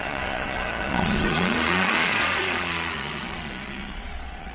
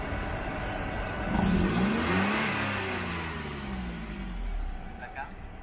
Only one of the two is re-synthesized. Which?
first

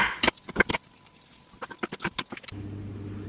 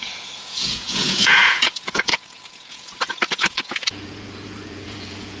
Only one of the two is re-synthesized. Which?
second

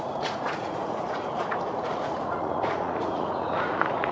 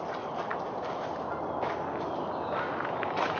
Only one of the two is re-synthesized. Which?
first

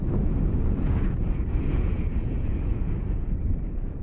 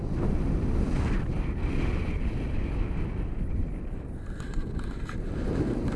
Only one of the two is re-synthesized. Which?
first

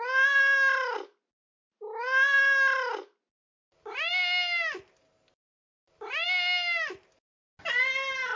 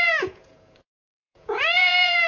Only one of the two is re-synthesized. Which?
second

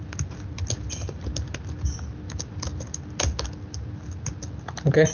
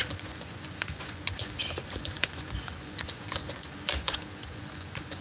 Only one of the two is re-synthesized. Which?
second